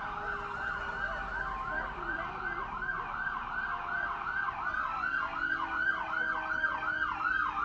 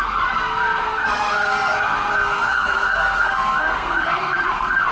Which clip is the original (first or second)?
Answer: first